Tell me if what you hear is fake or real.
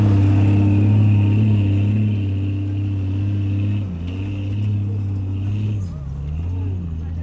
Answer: real